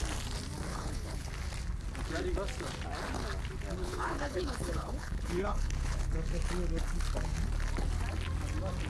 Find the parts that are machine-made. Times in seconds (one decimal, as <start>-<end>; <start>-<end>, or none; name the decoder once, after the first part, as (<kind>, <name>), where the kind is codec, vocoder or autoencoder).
0.7-1.3 (codec, HILCodec); 3.8-6.1